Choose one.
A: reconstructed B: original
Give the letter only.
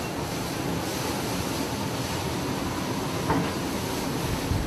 B